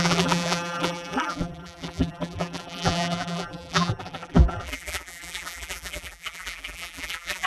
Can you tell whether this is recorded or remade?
remade